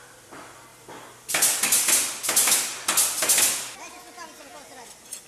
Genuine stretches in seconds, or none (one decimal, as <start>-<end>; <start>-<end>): 0.0-5.3